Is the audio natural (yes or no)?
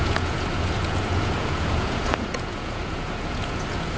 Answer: no